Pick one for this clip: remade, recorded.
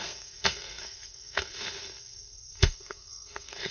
remade